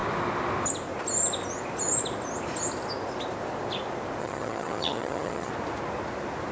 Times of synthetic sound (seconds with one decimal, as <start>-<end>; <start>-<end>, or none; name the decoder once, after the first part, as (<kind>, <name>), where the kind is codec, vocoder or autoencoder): 4.2-5.5 (vocoder, HiFi-GAN)